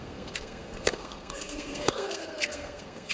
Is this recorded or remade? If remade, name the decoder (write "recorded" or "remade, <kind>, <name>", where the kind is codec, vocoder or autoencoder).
remade, codec, SNAC